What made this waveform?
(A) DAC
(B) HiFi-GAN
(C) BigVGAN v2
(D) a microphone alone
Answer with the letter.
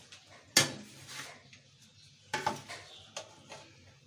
D